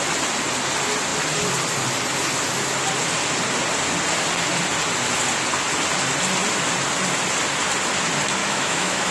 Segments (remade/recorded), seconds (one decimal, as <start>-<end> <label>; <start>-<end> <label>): 0.0-8.4 recorded; 8.4-9.1 remade